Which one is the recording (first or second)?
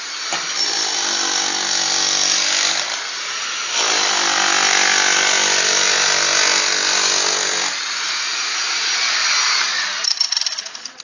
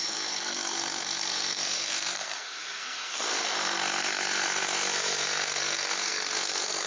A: first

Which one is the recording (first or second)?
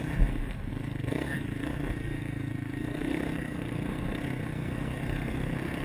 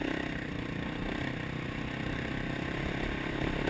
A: second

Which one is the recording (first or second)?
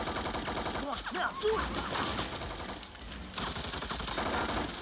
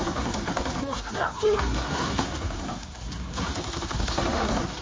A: first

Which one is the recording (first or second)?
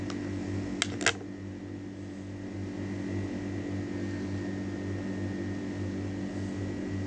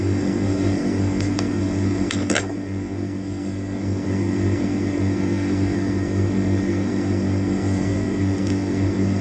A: first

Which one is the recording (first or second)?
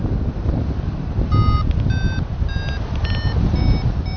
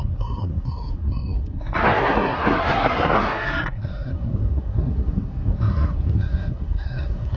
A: first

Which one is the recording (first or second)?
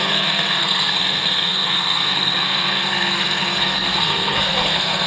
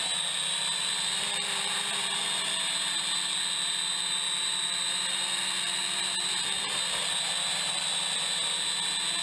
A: second